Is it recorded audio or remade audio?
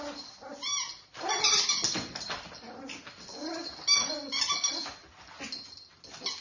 recorded